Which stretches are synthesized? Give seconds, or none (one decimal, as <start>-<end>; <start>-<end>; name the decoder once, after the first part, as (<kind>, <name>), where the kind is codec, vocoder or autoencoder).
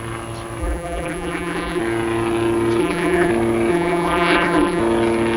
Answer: 0.6-1.8 (vocoder, BigVGAN v2); 2.8-3.3; 3.7-4.8